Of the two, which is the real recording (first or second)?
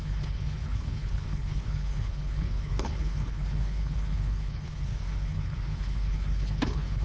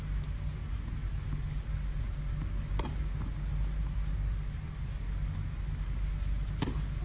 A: second